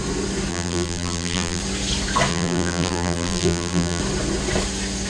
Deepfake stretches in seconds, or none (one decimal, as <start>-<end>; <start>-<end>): 0.5-1.6; 2.3-4.0